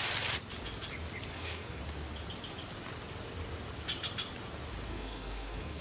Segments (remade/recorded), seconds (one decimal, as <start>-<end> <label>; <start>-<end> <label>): 0.0-1.3 recorded; 1.3-1.8 remade; 1.8-4.9 recorded; 4.9-5.8 remade